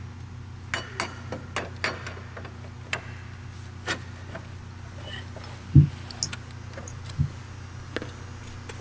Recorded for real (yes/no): yes